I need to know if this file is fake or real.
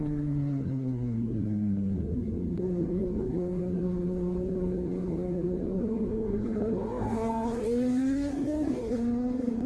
fake